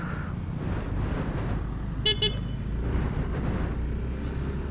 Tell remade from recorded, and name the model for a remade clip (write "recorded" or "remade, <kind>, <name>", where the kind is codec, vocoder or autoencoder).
recorded